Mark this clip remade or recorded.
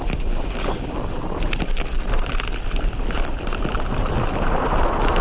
remade